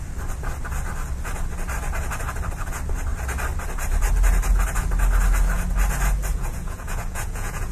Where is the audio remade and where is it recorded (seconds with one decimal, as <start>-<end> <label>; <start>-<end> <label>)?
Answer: 0.0-6.3 recorded; 6.3-7.7 remade